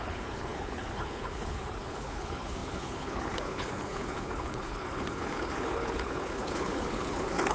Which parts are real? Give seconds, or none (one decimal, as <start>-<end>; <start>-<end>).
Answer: none